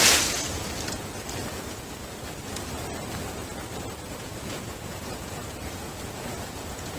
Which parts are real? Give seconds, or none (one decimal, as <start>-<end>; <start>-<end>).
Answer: 0.6-1.5; 2.5-4.2

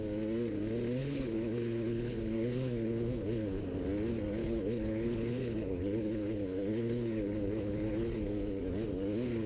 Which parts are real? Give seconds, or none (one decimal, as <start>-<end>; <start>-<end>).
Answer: 0.0-1.0; 3.6-4.4; 8.6-9.5